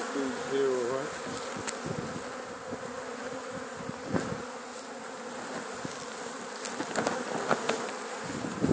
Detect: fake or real real